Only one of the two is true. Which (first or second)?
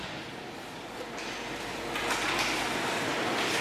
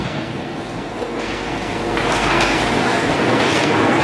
first